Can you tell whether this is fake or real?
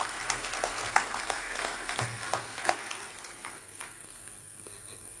fake